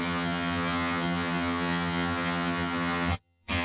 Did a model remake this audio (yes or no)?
yes